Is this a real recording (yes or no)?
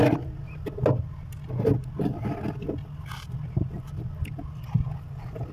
yes